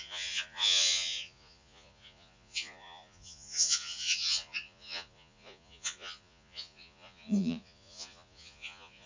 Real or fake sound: fake